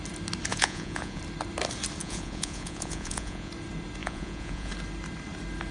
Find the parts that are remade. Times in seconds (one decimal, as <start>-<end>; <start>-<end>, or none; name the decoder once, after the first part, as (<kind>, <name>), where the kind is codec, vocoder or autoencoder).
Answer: 0.5-1.2 (vocoder, Vocos); 2.0-3.5; 4.0-4.7